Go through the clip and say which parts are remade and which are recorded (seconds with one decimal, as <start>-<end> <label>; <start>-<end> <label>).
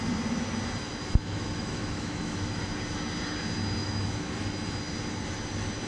0.0-1.2 recorded; 1.2-2.6 remade; 2.6-3.8 recorded; 3.8-4.3 remade; 4.3-5.9 recorded